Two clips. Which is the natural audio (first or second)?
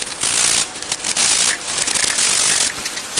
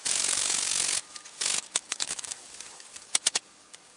first